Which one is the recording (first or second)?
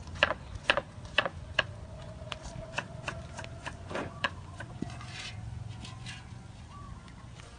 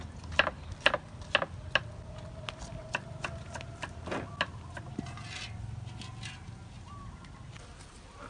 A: second